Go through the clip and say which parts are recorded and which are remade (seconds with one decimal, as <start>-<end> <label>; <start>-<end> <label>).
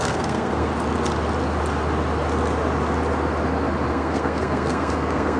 0.0-0.7 remade; 0.7-3.9 recorded; 3.9-5.4 remade